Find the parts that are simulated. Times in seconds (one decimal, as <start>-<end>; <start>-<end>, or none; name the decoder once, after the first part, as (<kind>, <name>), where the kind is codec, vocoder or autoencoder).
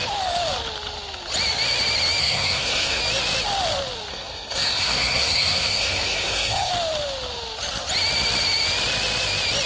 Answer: 2.2-3.0 (codec, SNAC); 4.1-6.7